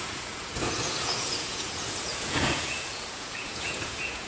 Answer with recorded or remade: remade